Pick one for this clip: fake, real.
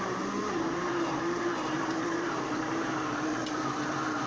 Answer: fake